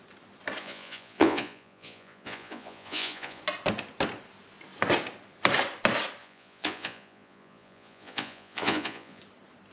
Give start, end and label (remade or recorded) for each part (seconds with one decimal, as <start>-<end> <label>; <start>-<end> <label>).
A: 0.0-0.6 recorded; 0.6-3.4 remade; 3.4-6.2 recorded; 6.2-9.2 remade; 9.2-9.7 recorded